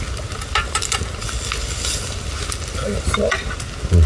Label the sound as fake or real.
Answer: real